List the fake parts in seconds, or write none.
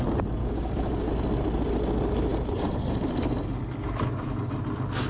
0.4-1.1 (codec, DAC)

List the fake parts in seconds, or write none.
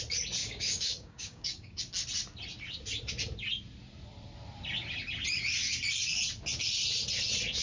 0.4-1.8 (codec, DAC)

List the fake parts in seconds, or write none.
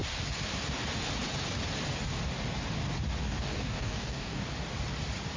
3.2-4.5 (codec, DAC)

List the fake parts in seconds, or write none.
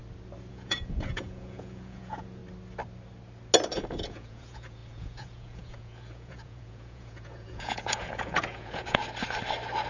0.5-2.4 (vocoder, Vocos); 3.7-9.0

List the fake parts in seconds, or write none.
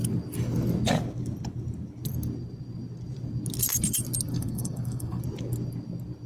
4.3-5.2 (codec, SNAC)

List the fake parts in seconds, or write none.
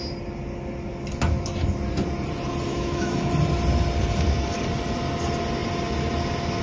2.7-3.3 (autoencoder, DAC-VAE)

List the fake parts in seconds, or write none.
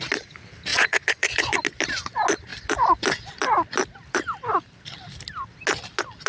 0.7-1.6 (vocoder, Vocos)